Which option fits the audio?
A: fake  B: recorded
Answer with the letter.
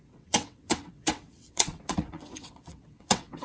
A